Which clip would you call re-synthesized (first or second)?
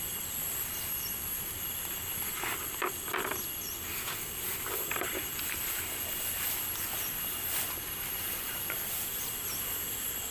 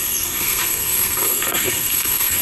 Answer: second